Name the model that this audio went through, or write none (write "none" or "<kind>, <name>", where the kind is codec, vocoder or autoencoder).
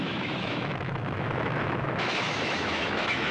autoencoder, DAC-VAE